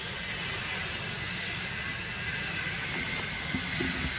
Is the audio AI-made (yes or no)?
no